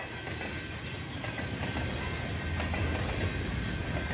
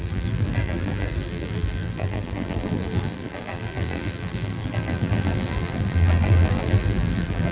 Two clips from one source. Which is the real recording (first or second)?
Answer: first